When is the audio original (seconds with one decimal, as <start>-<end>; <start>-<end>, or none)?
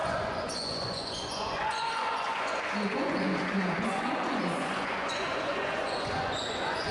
none